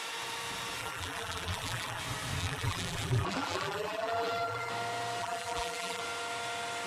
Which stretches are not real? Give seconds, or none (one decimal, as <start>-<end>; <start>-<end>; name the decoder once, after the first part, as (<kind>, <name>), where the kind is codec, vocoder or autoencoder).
0.8-2.0 (vocoder, BigVGAN v2); 2.4-4.7; 5.2-6.0